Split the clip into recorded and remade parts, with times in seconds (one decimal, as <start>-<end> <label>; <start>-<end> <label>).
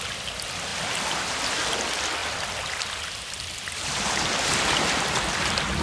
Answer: 0.0-5.8 recorded